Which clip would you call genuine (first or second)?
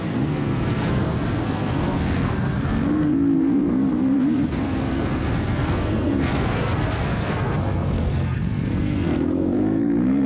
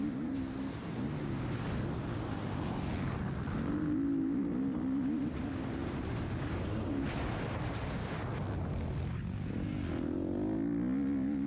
second